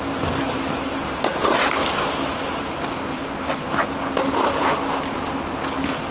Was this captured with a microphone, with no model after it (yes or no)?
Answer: yes